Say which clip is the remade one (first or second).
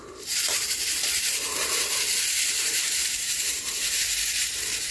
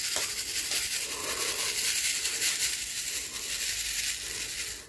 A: first